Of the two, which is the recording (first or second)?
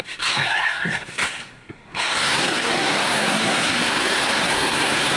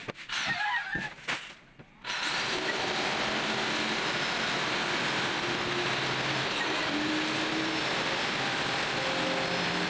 second